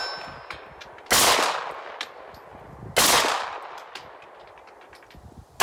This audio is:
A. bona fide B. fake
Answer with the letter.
A